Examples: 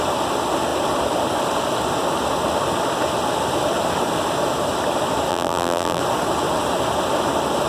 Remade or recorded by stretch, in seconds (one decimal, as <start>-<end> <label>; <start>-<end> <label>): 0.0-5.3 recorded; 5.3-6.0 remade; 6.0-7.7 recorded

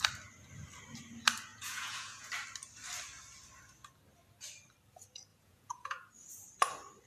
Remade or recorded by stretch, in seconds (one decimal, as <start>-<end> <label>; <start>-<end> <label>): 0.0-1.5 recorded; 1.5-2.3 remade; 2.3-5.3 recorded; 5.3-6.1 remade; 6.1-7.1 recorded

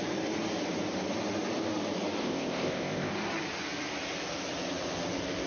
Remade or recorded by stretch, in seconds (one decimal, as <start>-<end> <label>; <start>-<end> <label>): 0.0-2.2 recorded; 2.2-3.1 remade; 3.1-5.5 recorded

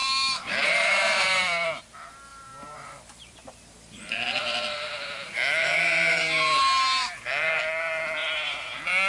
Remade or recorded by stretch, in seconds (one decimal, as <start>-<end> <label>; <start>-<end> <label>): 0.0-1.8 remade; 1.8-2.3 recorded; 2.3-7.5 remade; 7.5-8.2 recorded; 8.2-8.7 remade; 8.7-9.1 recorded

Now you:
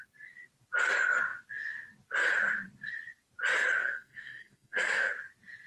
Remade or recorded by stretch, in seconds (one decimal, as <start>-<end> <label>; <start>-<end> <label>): 0.0-3.8 recorded; 3.8-5.1 remade; 5.1-5.7 recorded